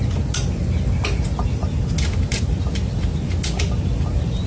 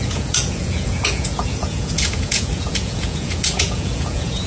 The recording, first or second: first